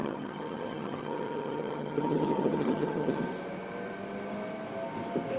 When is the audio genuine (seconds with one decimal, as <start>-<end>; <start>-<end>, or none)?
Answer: 3.2-5.4